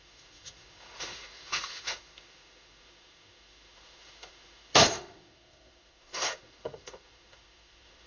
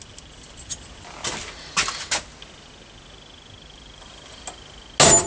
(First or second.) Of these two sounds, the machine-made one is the first